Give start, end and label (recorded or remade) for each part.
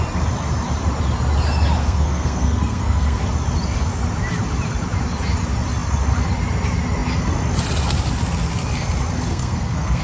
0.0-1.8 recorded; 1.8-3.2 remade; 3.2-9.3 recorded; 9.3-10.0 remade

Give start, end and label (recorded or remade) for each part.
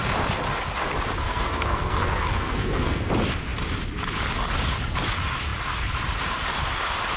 0.0-1.2 recorded; 1.2-3.1 remade; 3.1-7.2 recorded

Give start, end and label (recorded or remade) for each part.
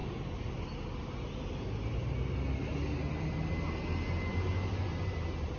0.0-5.6 recorded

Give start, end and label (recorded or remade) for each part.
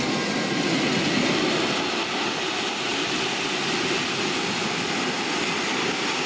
0.0-6.3 recorded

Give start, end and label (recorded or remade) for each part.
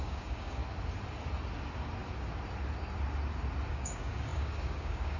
0.0-0.6 remade; 0.6-3.7 recorded; 3.7-5.2 remade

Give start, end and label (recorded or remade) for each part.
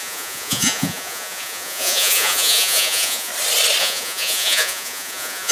0.0-3.3 remade; 3.3-3.8 recorded; 3.8-5.5 remade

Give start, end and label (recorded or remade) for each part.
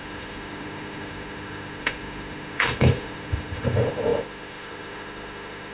0.0-5.7 remade